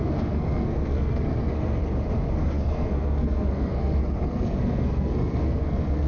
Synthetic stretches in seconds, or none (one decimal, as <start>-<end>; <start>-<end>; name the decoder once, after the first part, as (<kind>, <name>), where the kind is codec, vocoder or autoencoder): 0.0-1.8 (codec, SNAC); 2.3-6.1